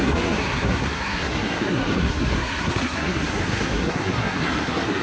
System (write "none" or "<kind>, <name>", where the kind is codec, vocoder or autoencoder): codec, SNAC